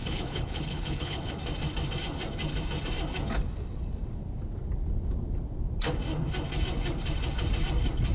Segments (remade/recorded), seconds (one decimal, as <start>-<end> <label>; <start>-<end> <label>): 0.0-1.3 remade; 1.3-8.1 recorded